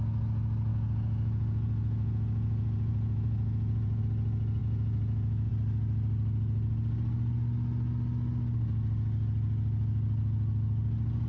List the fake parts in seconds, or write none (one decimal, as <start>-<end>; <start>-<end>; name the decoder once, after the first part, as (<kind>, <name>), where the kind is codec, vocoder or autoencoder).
0.7-4.0 (vocoder, Vocos); 4.6-5.5